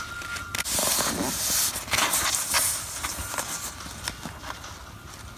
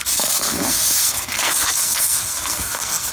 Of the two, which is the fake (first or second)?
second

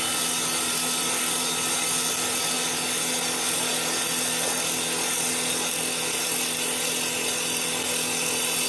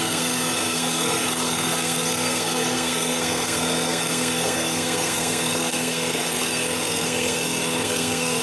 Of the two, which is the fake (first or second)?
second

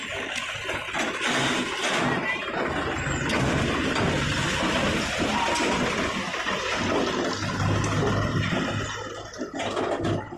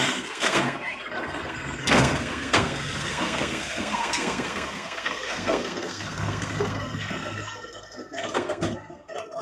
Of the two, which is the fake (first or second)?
second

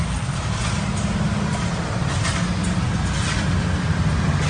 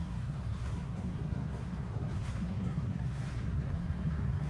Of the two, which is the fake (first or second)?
second